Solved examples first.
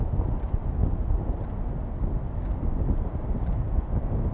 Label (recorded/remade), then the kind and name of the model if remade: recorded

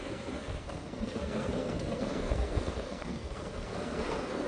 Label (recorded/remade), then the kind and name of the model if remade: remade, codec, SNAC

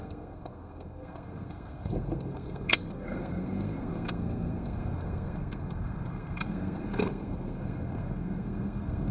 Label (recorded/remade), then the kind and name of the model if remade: remade, codec, SNAC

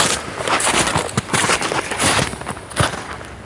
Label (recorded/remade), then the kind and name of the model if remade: recorded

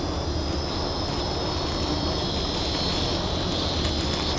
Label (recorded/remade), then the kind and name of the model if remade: recorded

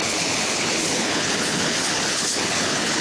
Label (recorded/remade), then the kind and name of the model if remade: remade, codec, HILCodec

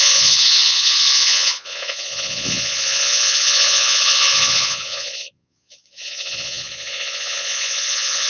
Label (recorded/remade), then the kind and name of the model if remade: remade, vocoder, Vocos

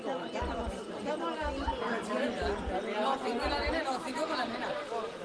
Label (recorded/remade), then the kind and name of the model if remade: recorded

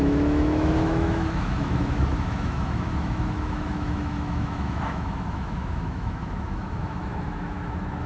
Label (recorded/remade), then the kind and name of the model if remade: remade, autoencoder, DAC-VAE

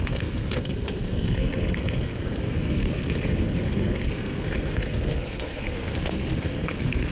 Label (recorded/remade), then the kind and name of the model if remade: remade, codec, SNAC